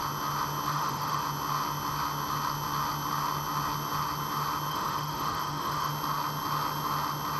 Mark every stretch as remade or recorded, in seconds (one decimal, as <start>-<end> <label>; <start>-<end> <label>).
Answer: 0.0-0.7 recorded; 0.7-1.2 remade; 1.2-4.7 recorded; 4.7-5.9 remade; 5.9-7.4 recorded